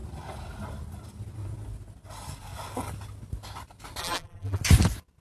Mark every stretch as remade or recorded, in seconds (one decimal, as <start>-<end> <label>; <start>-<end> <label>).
0.0-4.0 recorded; 4.0-4.6 remade; 4.6-5.2 recorded